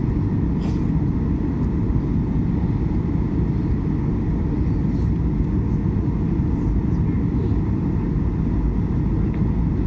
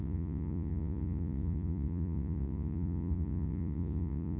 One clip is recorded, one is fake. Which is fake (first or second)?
second